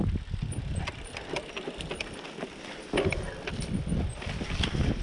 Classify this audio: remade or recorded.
recorded